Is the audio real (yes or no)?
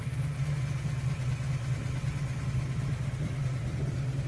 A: no